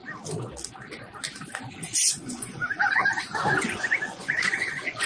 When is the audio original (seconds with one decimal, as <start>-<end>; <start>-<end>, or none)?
0.0-2.0